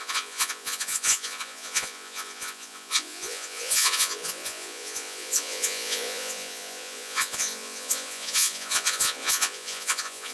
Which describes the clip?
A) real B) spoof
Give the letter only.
B